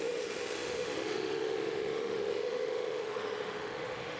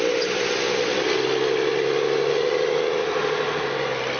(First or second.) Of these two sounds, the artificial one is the first